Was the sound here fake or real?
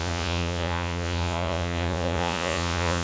fake